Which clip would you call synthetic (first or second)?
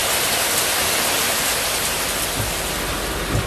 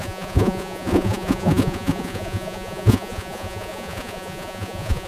second